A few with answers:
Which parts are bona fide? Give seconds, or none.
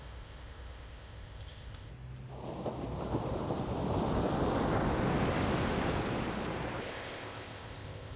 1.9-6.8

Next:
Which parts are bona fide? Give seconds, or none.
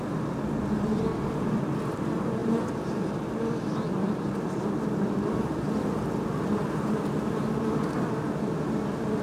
0.0-9.2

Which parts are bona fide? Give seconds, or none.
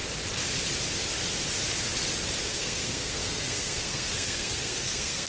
0.0-2.5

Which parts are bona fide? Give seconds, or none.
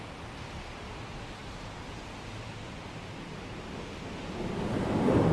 0.0-1.4; 3.6-5.3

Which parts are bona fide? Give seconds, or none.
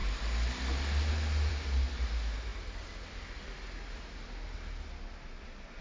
0.0-5.8